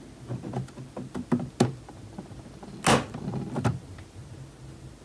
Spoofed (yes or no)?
no